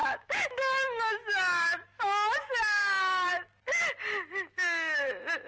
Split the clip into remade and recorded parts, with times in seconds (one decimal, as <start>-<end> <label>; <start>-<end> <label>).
0.0-3.3 remade; 3.3-5.5 recorded